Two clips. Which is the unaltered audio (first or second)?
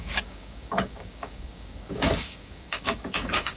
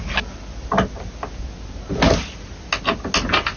second